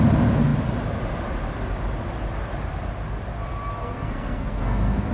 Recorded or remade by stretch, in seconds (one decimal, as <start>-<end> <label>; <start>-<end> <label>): 0.0-3.8 recorded; 3.8-5.1 remade